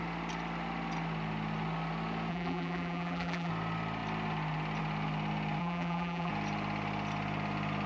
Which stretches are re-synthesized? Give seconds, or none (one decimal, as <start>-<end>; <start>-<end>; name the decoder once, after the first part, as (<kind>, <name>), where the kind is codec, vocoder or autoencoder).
2.3-3.5 (vocoder, BigVGAN v2); 5.6-6.3